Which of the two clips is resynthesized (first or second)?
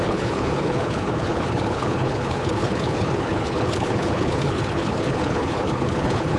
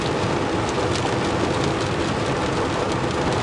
first